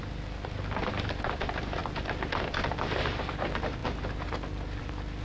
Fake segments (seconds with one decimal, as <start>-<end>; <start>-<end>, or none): none

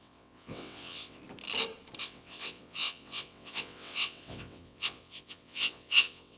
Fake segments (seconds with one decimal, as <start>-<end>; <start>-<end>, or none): 0.0-1.2; 2.0-6.4

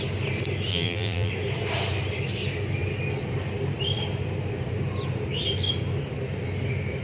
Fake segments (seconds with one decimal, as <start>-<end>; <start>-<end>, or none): 0.7-1.3